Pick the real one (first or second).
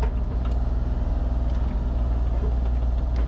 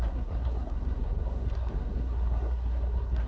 first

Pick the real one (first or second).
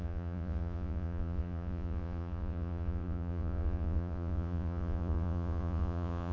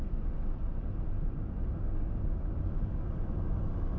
second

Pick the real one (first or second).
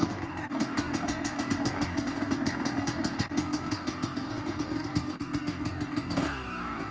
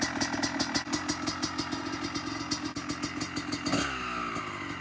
second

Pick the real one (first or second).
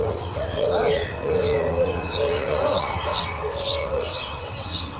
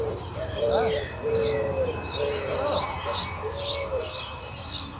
second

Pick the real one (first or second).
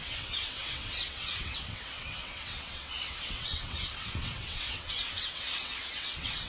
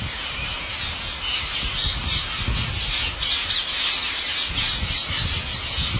second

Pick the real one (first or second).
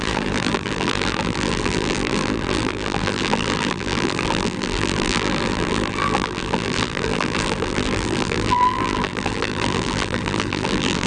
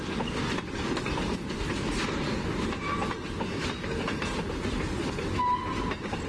second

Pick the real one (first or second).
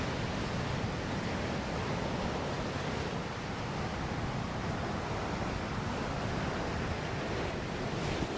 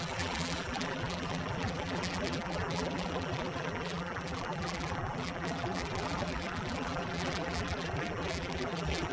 first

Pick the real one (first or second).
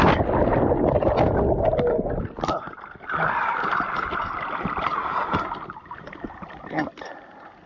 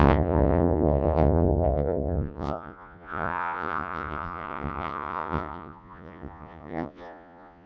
first